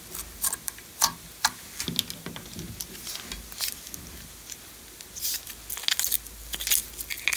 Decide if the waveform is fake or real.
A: real